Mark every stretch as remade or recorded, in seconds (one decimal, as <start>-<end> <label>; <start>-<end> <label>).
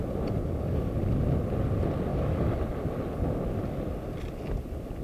0.0-0.4 recorded; 0.4-1.0 remade; 1.0-2.1 recorded; 2.1-2.6 remade; 2.6-5.0 recorded